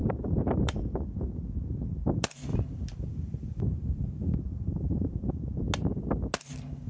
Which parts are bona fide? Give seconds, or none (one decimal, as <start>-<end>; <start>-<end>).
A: 0.8-2.5; 5.3-6.9